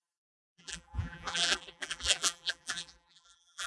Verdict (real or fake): fake